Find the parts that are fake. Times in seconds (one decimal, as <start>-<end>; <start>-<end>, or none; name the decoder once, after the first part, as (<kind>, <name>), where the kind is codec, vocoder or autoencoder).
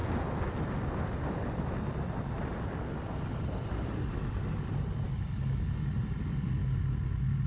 none